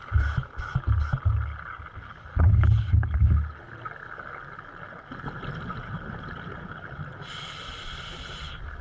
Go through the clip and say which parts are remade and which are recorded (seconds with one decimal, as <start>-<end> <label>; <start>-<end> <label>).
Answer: 0.0-2.3 recorded; 2.3-3.3 remade; 3.3-8.8 recorded